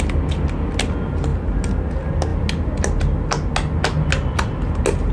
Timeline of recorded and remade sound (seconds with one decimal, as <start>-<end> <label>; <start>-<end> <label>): 0.0-5.1 recorded